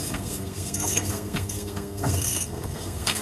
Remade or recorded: remade